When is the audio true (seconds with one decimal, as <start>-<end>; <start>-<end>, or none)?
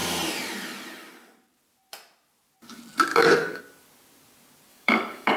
0.0-3.1; 3.6-4.7